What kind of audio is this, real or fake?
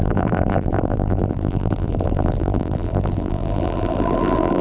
fake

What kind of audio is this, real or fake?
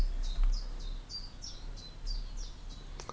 real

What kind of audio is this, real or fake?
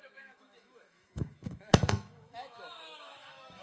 fake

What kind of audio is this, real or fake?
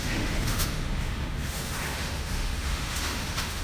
fake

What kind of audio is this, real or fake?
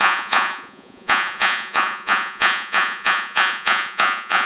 fake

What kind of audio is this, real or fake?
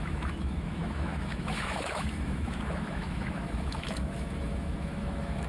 fake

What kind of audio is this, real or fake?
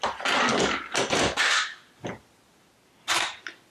real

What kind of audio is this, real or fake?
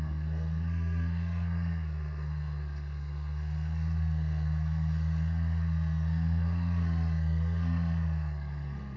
fake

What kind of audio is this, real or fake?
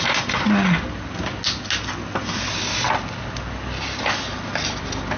real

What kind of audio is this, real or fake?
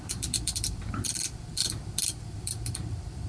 fake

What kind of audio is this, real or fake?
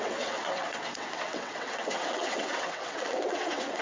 fake